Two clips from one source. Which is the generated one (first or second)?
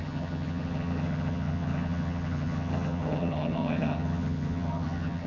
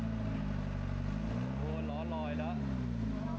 first